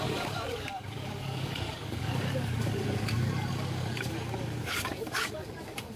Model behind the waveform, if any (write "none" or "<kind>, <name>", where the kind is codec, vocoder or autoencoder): codec, DAC